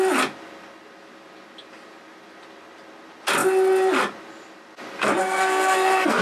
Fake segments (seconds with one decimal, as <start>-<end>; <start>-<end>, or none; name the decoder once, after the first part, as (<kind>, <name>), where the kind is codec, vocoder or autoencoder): 5.2-6.2 (codec, SNAC)